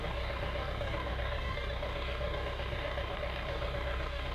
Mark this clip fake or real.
fake